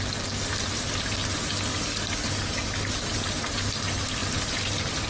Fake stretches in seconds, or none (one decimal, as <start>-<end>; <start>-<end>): 1.7-3.0